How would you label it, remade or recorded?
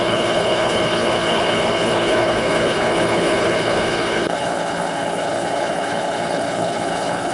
remade